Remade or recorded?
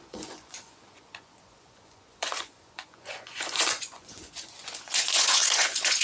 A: remade